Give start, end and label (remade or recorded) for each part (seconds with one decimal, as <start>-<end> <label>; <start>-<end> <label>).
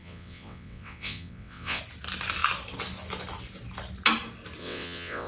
0.0-1.8 remade; 1.8-4.6 recorded; 4.6-5.3 remade